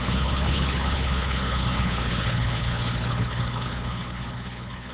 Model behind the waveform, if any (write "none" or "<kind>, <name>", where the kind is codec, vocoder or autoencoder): codec, HILCodec